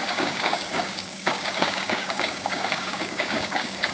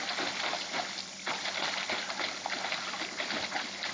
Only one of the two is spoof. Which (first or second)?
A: first